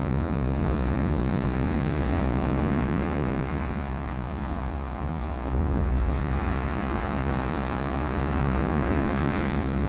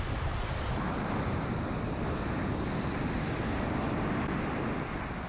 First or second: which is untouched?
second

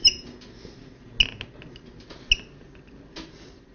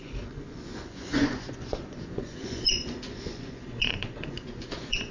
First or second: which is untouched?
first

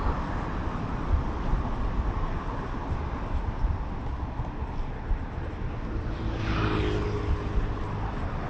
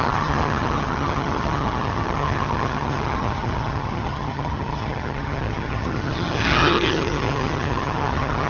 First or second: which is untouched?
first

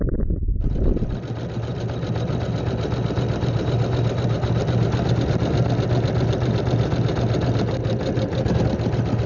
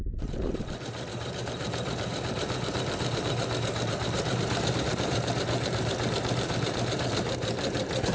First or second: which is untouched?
first